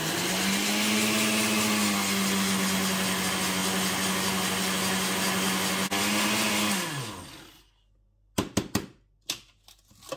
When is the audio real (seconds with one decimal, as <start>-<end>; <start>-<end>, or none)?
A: 0.0-10.2